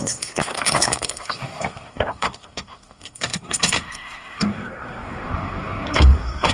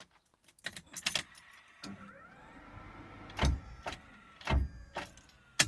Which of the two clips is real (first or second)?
second